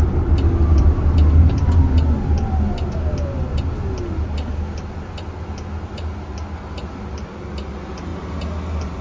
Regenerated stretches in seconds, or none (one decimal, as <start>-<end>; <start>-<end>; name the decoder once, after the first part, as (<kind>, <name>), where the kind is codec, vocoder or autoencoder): none